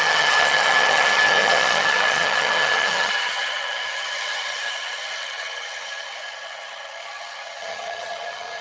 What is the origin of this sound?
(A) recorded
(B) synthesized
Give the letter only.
B